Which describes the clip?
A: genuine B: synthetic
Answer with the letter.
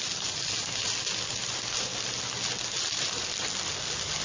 A